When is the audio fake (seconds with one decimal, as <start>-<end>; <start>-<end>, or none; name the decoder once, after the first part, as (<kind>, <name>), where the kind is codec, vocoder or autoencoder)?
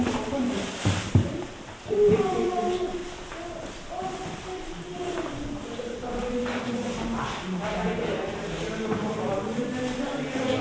0.0-3.0 (vocoder, BigVGAN v2); 3.9-9.6